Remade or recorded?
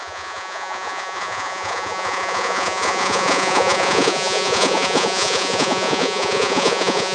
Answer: remade